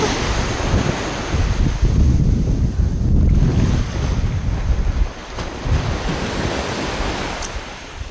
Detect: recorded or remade recorded